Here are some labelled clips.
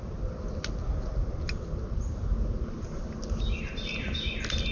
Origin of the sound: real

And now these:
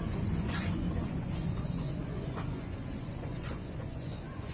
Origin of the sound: fake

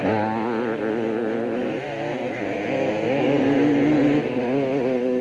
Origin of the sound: real